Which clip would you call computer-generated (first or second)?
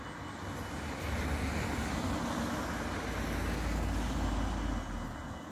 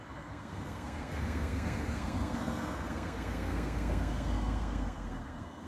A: second